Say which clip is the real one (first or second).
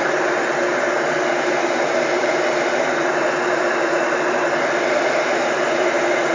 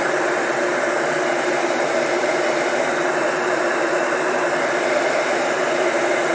first